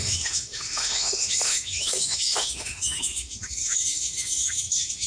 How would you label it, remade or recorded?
remade